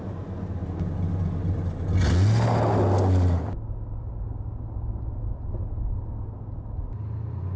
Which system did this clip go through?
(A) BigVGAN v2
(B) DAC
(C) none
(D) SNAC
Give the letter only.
C